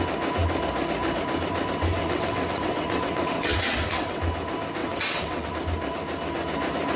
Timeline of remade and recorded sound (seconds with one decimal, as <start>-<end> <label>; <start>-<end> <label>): 0.0-1.9 recorded; 1.9-4.2 remade; 4.2-4.8 recorded; 4.8-5.5 remade; 5.5-7.0 recorded